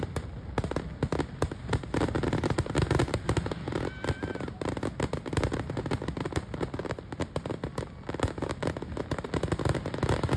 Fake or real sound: real